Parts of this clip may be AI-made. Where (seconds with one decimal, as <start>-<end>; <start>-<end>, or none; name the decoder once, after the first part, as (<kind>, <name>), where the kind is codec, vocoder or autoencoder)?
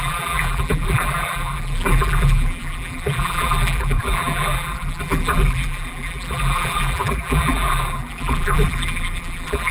0.0-9.7 (vocoder, BigVGAN v2)